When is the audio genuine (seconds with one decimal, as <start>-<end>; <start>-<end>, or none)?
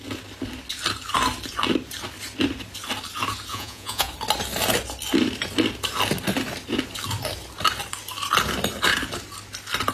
0.0-3.5; 4.1-9.9